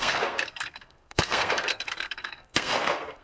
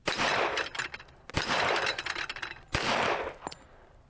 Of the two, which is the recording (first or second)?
second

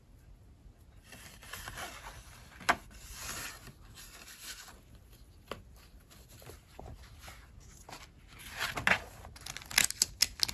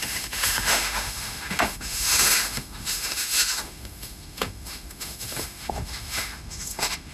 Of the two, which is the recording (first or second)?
first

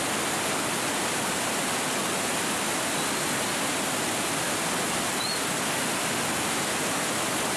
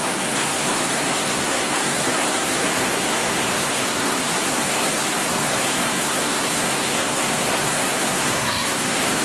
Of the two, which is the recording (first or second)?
first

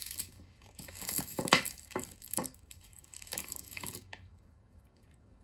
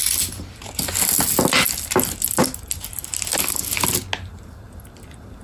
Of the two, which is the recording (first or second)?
second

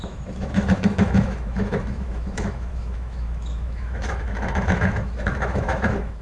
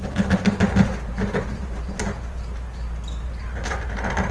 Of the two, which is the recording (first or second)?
second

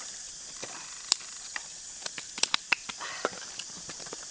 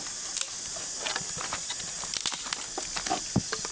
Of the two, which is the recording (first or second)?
second